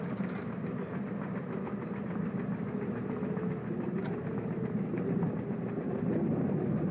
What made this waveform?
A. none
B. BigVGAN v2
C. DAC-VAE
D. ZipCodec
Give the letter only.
A